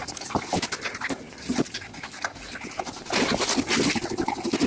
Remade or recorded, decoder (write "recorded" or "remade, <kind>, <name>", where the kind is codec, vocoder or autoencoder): recorded